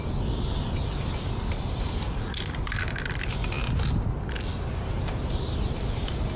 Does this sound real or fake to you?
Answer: real